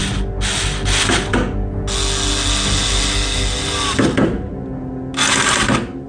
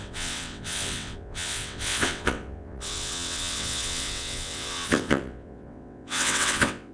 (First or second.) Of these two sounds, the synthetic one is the second